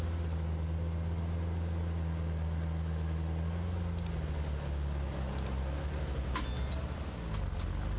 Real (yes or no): yes